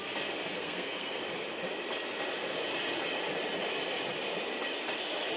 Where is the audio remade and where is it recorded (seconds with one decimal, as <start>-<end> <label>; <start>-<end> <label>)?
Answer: 0.0-0.5 recorded; 0.5-1.2 remade; 1.2-5.4 recorded